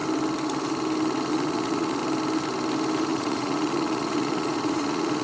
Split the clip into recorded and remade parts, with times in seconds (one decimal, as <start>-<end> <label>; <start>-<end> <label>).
0.0-1.3 recorded; 1.3-2.0 remade; 2.0-3.1 recorded; 3.1-5.2 remade